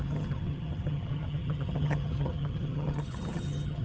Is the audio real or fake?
fake